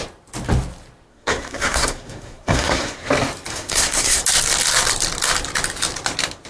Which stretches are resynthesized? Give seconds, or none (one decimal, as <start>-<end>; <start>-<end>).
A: 1.1-3.1; 3.5-4.2